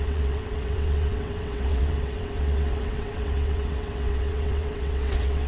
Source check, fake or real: fake